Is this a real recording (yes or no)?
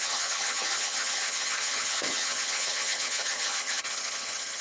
no